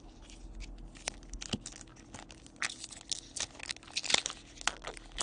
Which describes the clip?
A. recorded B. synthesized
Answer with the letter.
A